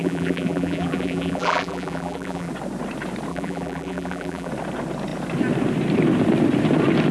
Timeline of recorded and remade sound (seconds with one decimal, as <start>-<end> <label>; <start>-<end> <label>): 0.0-2.5 remade; 2.5-3.3 recorded; 3.3-4.5 remade; 4.5-7.1 recorded